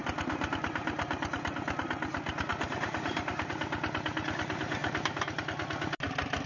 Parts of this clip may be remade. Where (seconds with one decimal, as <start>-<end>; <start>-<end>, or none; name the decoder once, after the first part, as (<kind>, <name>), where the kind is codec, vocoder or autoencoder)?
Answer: 0.0-1.3 (vocoder, BigVGAN v2); 2.5-3.5; 4.8-5.4